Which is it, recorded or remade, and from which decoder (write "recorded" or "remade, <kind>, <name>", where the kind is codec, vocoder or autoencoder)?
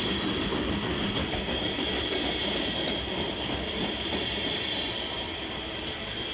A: recorded